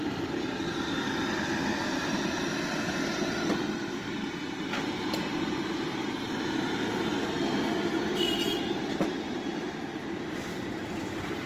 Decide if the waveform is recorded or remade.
remade